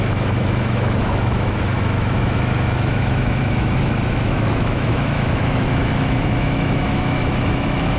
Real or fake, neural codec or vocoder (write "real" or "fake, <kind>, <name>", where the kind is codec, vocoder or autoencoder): fake, autoencoder, DAC-VAE